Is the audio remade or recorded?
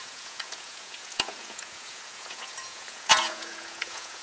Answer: remade